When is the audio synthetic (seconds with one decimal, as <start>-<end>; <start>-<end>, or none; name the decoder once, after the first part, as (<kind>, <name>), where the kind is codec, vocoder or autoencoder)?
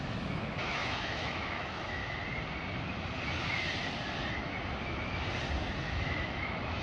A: 0.0-2.0 (autoencoder, DAC-VAE); 5.8-6.8